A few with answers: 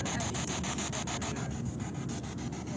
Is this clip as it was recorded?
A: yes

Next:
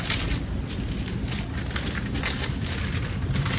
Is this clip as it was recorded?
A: yes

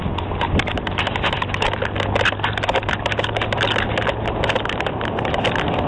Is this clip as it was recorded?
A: yes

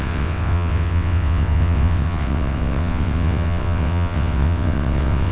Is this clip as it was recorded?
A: no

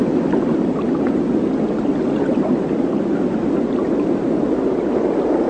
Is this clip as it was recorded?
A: yes